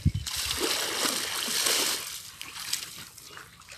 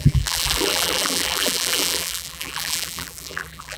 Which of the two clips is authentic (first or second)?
first